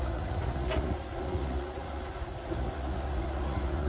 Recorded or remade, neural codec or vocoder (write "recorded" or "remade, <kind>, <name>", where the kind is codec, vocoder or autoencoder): remade, vocoder, Vocos